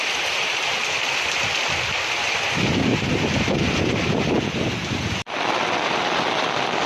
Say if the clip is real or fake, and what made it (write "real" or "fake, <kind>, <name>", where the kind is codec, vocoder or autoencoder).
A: real